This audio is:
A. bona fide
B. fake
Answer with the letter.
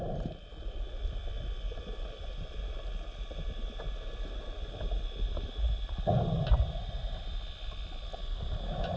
A